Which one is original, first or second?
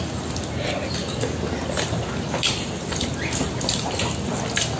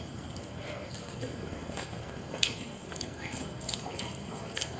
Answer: first